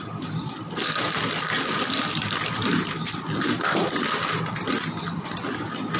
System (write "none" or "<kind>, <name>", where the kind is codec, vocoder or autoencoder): vocoder, BigVGAN v2